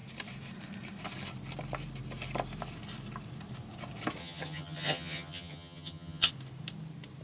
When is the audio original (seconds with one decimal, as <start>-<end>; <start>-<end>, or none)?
0.0-4.2; 6.3-7.2